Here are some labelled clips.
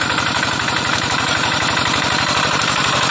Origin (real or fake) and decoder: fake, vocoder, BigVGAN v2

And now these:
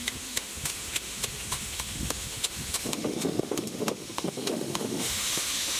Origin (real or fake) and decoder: fake, autoencoder, DAC-VAE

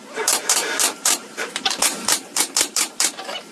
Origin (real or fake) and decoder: fake, vocoder, BigVGAN v2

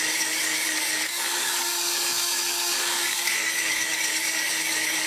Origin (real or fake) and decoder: fake, codec, DAC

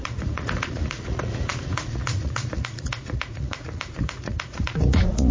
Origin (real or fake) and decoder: fake, vocoder, Vocos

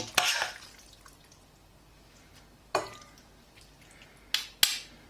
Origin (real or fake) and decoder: real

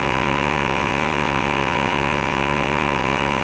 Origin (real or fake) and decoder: fake, vocoder, WaveNeXt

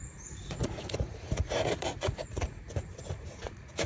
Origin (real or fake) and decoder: fake, vocoder, Vocos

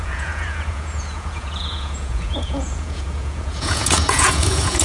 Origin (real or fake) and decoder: fake, vocoder, Vocos